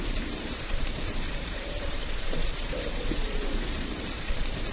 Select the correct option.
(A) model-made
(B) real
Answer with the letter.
A